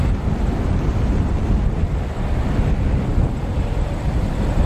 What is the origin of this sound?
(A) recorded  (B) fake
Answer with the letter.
A